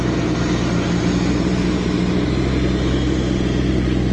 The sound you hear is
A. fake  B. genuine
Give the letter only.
B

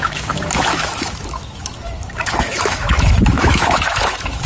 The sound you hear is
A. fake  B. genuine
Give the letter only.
A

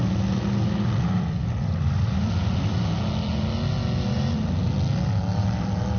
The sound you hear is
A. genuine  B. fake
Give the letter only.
A